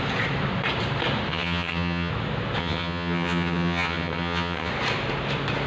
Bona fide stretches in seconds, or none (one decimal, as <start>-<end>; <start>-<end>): 0.0-1.3; 2.1-2.6; 4.7-5.7